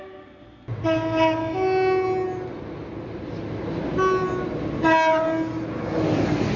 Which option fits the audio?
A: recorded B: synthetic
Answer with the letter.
A